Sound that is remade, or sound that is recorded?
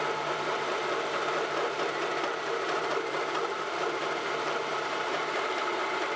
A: remade